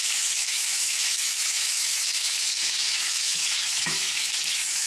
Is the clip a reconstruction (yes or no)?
yes